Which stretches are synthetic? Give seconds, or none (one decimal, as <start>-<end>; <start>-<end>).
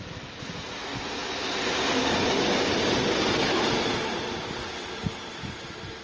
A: 1.2-2.5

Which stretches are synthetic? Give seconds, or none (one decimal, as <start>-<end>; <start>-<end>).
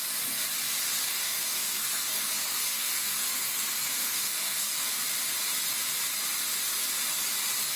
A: 1.1-4.9